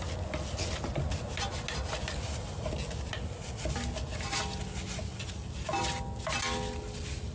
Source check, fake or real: real